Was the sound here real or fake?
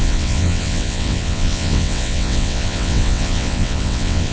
fake